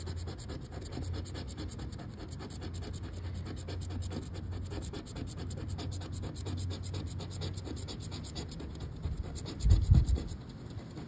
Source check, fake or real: real